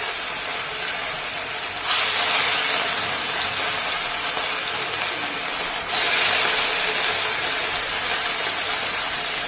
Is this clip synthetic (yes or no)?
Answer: no